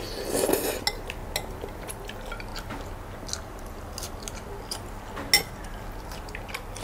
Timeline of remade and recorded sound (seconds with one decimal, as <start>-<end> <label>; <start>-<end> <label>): 0.0-6.8 recorded